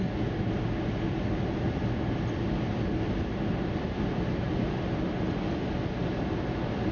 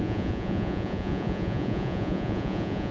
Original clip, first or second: first